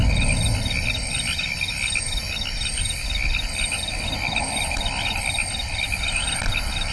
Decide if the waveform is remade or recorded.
recorded